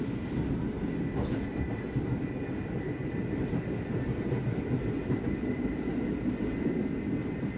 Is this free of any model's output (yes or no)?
yes